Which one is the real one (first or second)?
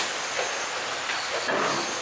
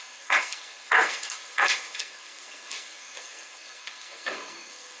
first